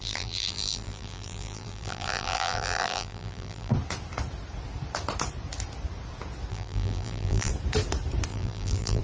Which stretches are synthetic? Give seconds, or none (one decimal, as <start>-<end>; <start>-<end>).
0.0-3.7; 6.5-7.5; 8.3-9.0